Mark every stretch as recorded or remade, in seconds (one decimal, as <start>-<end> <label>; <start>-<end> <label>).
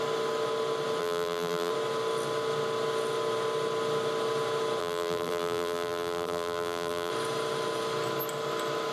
0.0-1.0 recorded; 1.0-1.7 remade; 1.7-4.8 recorded; 4.8-7.1 remade; 7.1-8.9 recorded